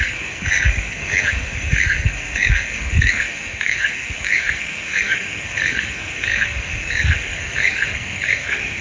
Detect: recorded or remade remade